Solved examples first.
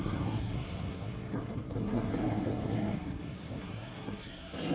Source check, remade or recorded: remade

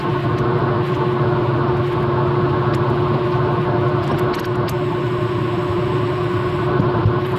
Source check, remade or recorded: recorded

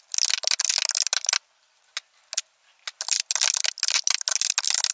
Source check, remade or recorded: recorded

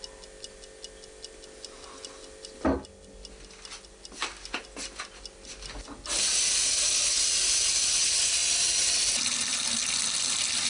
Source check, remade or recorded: recorded